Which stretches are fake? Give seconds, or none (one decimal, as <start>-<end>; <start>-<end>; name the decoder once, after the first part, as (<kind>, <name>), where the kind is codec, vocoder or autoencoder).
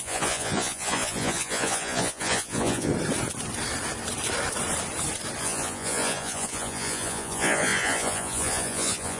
0.0-2.9 (vocoder, Vocos); 5.4-9.2